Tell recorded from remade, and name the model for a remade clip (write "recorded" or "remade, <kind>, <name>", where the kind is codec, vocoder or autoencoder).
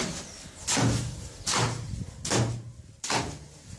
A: recorded